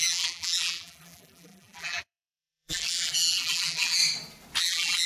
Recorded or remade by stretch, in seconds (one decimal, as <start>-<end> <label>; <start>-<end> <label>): 0.0-4.0 remade; 4.0-4.6 recorded; 4.6-5.1 remade